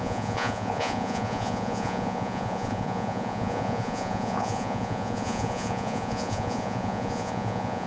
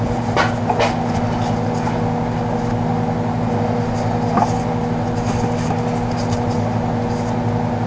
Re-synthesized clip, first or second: first